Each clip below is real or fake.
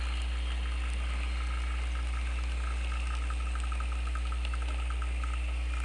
real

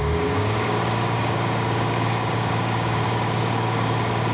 fake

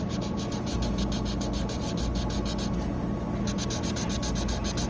real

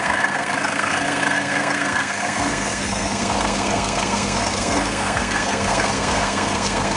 fake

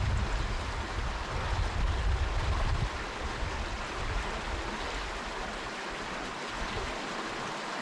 real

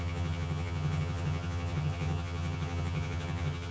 fake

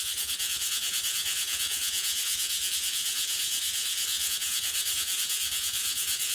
fake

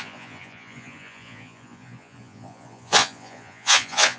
fake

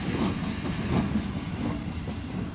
real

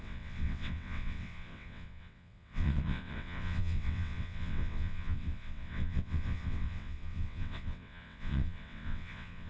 fake